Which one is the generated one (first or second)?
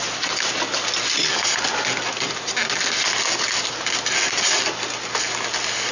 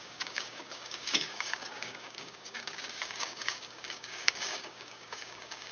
second